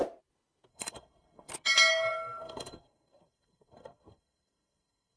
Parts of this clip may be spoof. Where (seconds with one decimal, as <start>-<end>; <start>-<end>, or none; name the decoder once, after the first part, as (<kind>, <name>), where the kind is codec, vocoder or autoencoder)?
0.7-1.5 (codec, SNAC); 1.9-5.2